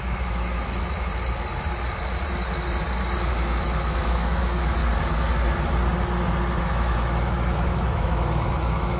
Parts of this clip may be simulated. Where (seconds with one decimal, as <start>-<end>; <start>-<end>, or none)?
0.0-1.1; 3.3-4.8; 6.6-9.0